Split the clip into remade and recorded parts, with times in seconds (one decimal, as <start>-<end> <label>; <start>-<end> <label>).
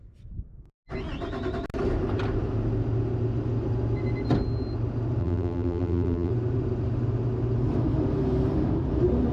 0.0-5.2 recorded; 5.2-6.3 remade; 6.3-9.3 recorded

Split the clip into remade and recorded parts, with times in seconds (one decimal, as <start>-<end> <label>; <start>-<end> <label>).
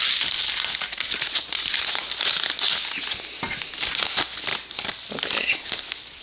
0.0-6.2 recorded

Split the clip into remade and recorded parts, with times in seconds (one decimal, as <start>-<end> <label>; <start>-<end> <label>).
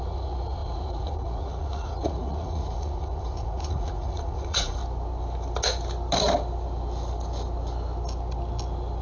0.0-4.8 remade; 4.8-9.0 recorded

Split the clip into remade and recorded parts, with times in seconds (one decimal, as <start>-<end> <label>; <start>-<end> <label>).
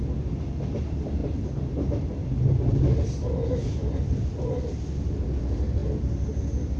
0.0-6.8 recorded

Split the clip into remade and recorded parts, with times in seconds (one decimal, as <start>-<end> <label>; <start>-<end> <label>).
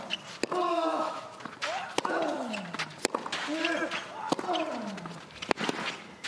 0.0-0.7 recorded; 0.7-1.2 remade; 1.2-6.3 recorded